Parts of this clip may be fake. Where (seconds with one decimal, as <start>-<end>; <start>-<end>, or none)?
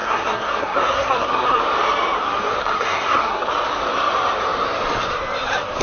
0.0-1.6; 2.6-3.5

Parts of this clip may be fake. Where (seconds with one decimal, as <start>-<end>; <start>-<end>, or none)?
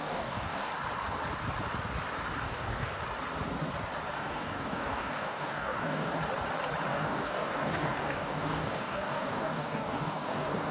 0.0-0.7; 2.4-2.9; 4.2-6.1; 6.9-10.7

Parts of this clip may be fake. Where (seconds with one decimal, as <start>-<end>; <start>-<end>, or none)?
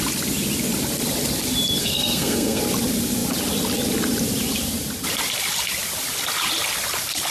1.8-2.6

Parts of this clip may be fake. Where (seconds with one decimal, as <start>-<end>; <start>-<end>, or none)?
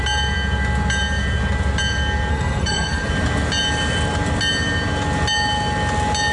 2.3-3.1